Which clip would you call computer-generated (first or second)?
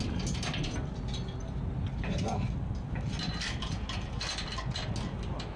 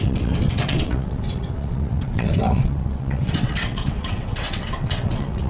second